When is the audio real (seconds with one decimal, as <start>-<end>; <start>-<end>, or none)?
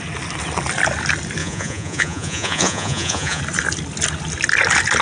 0.0-1.4; 3.4-5.0